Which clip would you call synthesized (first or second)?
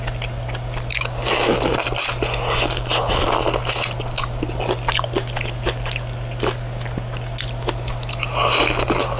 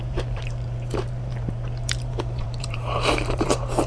second